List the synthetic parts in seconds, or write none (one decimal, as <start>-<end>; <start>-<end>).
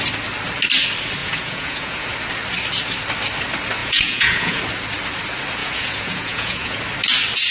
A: 1.2-2.1; 3.8-4.6; 5.6-6.8